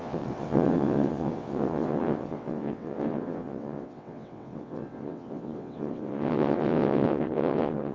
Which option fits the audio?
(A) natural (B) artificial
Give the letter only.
B